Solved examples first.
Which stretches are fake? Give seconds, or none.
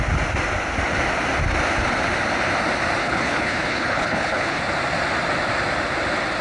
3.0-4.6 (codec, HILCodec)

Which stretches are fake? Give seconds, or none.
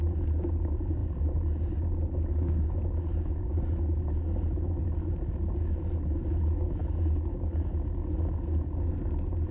none